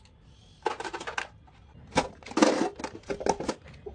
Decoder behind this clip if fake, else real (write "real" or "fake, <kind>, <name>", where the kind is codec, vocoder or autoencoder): real